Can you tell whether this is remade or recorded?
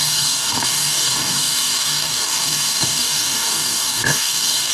remade